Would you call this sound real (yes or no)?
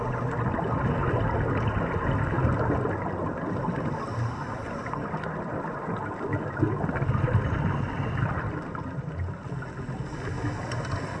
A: yes